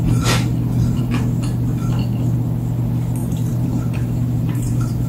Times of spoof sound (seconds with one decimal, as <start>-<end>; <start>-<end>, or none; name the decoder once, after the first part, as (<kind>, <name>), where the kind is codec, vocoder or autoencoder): 3.2-5.1 (vocoder, BigVGAN v2)